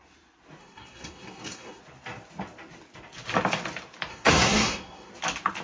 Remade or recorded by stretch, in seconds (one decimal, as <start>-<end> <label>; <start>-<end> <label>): 0.0-0.6 recorded; 0.6-1.8 remade; 1.8-4.1 recorded; 4.1-5.1 remade; 5.1-5.6 recorded